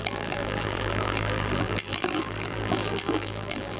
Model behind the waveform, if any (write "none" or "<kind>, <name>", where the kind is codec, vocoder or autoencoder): vocoder, BigVGAN v2